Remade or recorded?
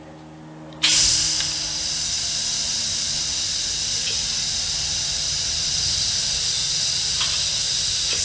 recorded